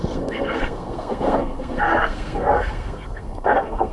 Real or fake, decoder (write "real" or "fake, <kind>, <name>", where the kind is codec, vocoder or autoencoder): fake, codec, SNAC